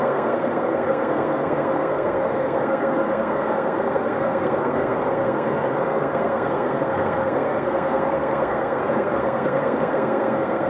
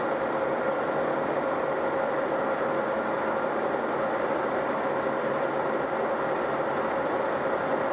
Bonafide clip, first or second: second